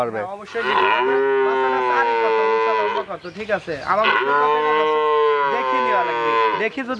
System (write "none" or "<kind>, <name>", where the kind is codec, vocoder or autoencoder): none